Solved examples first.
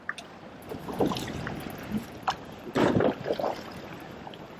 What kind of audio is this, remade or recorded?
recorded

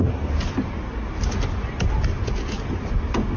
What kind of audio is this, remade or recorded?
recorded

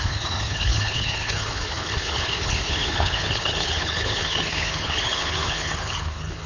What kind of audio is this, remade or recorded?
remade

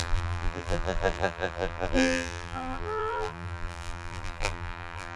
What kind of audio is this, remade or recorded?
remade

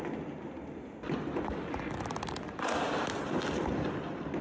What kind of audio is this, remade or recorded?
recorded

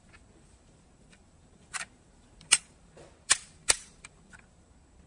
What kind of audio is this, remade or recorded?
remade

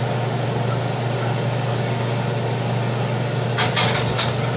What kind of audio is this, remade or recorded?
recorded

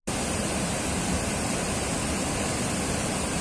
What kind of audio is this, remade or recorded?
recorded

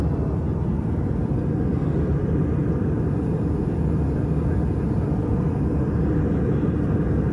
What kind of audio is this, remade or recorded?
recorded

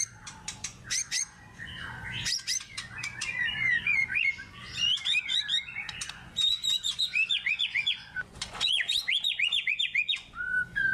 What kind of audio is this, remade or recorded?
remade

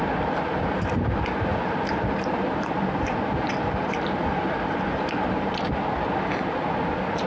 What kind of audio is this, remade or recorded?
remade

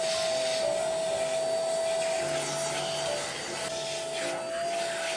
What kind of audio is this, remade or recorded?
recorded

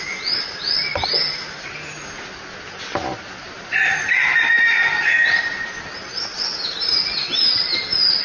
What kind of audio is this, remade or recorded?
recorded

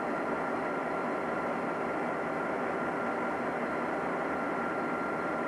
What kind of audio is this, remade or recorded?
recorded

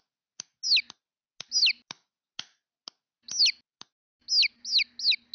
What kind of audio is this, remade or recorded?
recorded